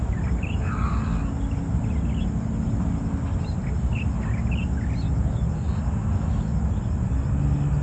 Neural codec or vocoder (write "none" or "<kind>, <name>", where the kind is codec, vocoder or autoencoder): none